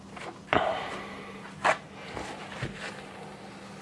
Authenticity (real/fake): real